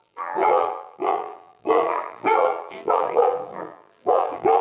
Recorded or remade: remade